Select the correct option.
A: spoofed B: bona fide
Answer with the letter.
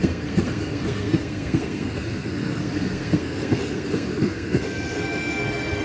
A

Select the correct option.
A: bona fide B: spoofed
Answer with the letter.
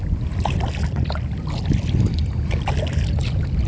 A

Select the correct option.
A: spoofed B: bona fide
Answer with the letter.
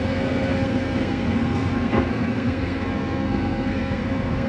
A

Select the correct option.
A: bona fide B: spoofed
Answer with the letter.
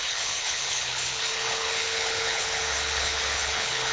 B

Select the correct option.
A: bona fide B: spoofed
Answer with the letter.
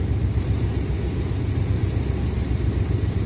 A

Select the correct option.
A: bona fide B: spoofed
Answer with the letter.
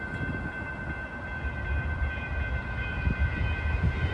B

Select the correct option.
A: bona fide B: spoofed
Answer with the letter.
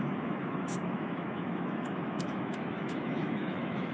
B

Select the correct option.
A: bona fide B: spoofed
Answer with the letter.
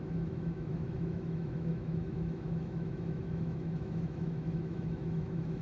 B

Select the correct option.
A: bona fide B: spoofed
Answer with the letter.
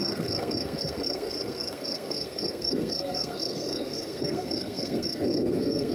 B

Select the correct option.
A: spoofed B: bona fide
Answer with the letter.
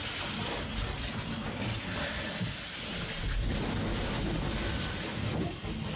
B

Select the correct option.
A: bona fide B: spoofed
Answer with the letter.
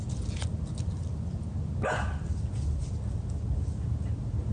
A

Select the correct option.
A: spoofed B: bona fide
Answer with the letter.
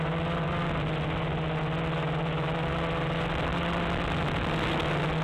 B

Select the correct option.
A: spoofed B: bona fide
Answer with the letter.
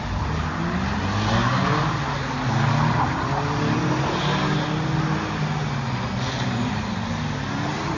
B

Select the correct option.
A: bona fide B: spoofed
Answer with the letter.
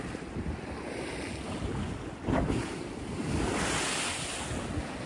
A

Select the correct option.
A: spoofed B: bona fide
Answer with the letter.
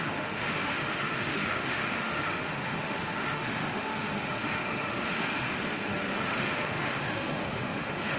A